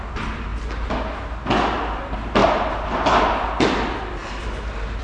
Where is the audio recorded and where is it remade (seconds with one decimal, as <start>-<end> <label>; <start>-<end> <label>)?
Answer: 0.0-2.4 recorded; 2.4-3.2 remade; 3.2-5.0 recorded